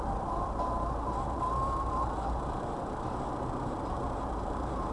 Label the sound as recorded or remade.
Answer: remade